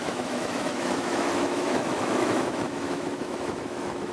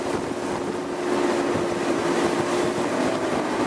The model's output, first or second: first